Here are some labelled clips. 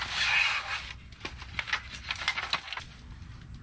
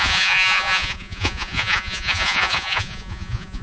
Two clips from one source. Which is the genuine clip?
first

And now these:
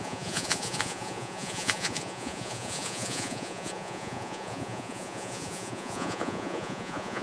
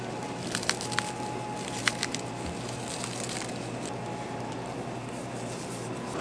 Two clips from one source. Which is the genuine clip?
second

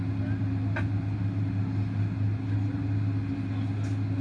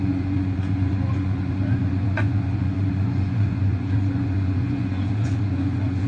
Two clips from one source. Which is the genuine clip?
first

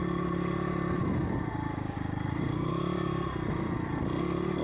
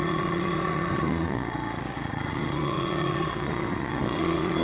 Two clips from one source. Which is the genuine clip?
first